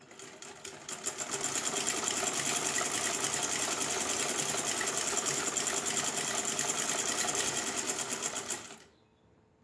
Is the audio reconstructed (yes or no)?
no